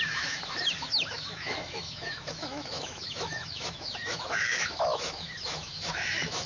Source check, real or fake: fake